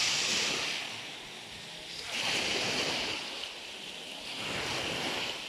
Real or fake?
real